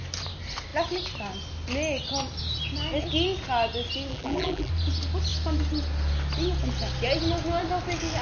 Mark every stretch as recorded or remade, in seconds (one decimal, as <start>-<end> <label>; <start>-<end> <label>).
0.0-4.1 recorded; 4.1-4.7 remade; 4.7-8.2 recorded